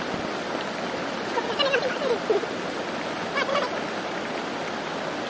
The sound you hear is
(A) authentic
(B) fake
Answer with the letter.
A